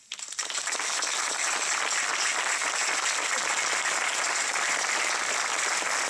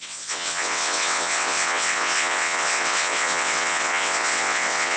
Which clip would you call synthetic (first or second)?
second